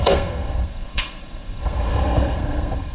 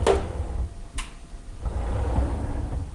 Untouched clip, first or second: second